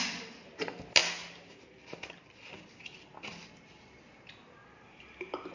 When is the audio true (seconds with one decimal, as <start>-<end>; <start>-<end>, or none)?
0.0-5.5